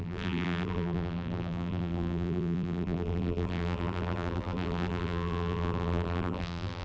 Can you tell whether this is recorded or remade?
remade